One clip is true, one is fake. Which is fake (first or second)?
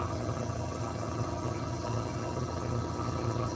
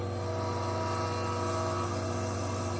first